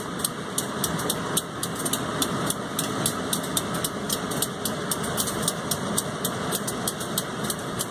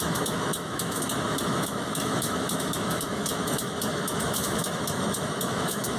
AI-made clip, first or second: second